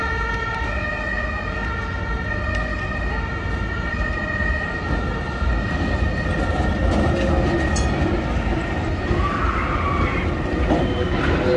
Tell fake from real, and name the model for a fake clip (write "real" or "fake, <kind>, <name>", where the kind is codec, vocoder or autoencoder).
real